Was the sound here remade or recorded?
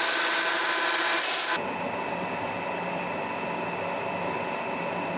recorded